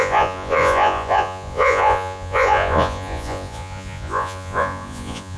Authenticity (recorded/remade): remade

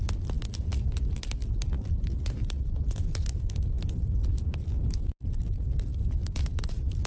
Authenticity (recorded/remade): recorded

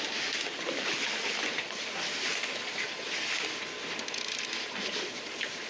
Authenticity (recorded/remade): recorded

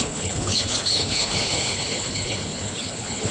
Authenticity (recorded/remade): remade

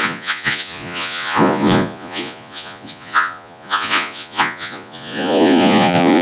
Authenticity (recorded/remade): remade